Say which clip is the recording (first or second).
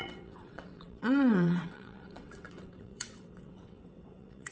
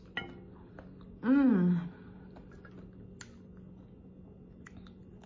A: second